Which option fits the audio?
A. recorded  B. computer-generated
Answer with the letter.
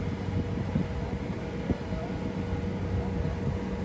A